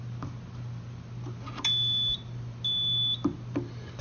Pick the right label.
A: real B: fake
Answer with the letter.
A